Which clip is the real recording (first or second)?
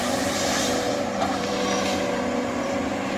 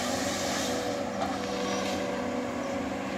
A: second